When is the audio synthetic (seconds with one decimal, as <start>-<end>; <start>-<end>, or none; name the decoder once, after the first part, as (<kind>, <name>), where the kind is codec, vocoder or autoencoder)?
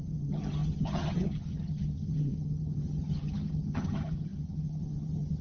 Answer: 0.0-5.4 (vocoder, HiFi-GAN)